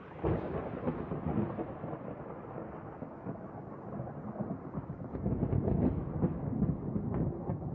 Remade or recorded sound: recorded